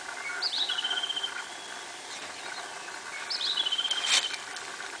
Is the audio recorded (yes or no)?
yes